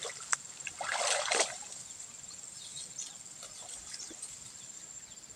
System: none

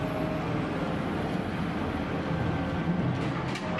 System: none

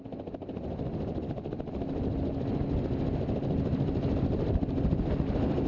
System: none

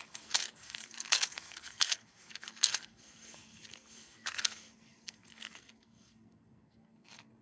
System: codec, SNAC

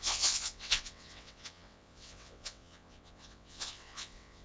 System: vocoder, WaveNeXt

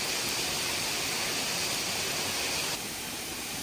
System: none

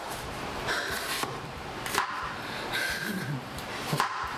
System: vocoder, BigVGAN v2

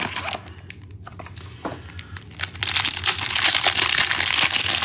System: none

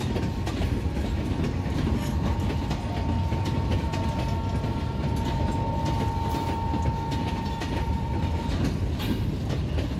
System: none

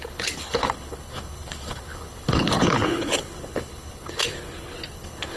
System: codec, HILCodec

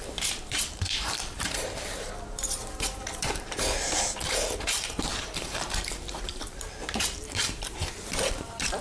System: vocoder, BigVGAN v2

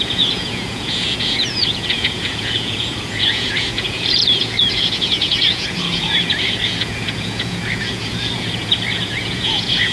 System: vocoder, Vocos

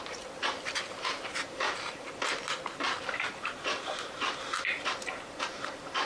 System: vocoder, BigVGAN v2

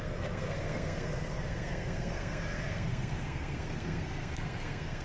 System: codec, SNAC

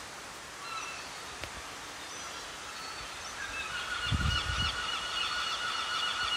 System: none